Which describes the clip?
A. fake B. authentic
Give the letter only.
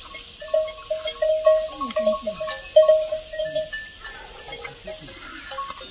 B